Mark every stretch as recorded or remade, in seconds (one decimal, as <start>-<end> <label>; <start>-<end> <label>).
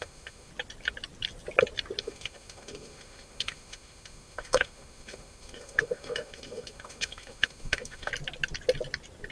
0.0-0.5 remade; 0.5-2.0 recorded; 2.0-8.1 remade; 8.1-9.3 recorded